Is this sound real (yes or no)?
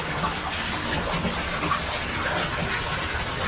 yes